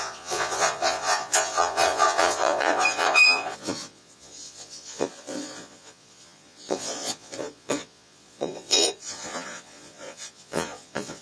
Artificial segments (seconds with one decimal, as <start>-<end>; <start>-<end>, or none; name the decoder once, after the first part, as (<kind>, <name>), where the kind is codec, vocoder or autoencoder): 0.0-11.2 (vocoder, Vocos)